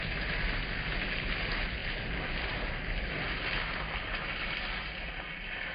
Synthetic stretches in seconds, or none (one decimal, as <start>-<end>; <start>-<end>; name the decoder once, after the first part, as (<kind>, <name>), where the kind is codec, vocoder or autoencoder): none